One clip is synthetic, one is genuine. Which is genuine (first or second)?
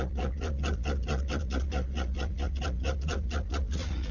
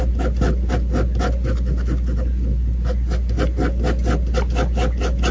second